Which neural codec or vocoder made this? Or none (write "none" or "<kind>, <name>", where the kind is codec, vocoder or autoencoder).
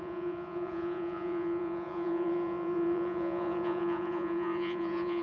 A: vocoder, Vocos